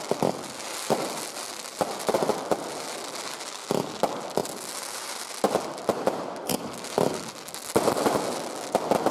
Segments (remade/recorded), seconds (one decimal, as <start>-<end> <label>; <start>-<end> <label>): 0.0-9.1 recorded